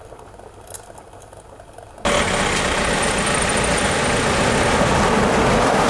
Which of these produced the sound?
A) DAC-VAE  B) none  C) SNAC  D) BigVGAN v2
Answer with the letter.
B